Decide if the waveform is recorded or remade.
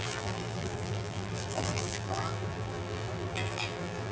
remade